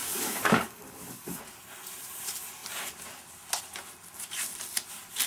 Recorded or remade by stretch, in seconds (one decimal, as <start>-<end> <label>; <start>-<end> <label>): 0.0-1.4 remade; 1.4-5.3 recorded